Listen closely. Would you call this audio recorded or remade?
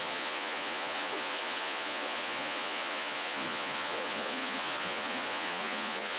remade